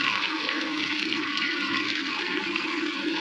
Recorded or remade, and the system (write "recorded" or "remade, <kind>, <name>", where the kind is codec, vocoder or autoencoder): remade, codec, SNAC